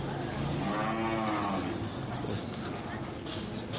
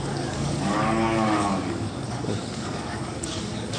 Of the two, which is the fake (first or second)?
second